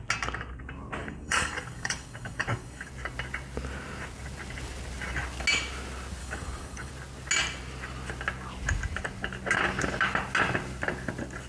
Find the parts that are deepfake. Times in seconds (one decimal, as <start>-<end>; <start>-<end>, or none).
1.0-2.9; 6.2-6.9